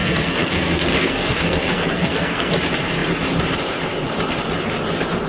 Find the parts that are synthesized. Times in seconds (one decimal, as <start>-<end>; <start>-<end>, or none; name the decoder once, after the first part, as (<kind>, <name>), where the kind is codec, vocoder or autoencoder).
0.0-2.5 (codec, SNAC)